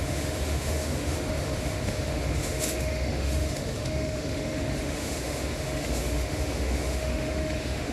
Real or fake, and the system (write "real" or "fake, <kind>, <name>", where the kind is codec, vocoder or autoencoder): fake, autoencoder, DAC-VAE